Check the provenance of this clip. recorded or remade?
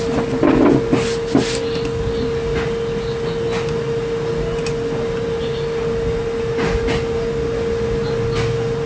recorded